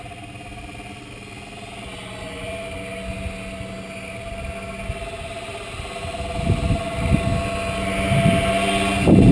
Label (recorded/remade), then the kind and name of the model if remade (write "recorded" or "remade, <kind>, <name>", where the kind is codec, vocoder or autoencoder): recorded